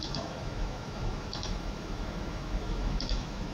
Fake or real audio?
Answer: fake